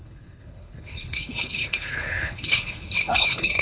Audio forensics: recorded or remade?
remade